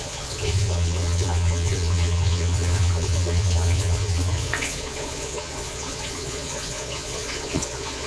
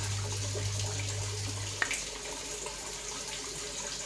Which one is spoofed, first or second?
first